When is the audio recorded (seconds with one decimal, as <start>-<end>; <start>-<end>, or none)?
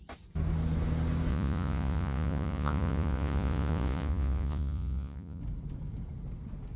0.0-1.3; 5.4-6.8